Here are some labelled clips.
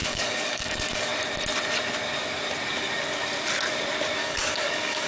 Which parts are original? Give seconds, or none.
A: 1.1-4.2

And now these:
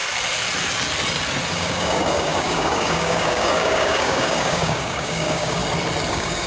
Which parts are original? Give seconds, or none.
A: 0.0-1.5; 5.6-6.1

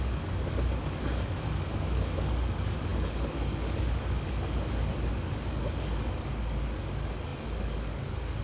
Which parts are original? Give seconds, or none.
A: none